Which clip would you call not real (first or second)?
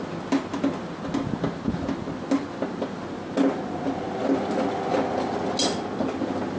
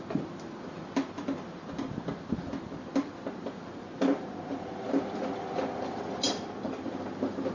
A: second